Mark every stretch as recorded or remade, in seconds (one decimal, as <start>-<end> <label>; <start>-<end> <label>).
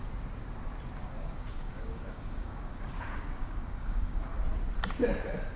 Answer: 0.0-1.0 recorded; 1.0-4.4 remade; 4.4-5.6 recorded